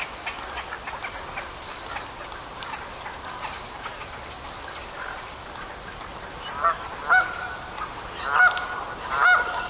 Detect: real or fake real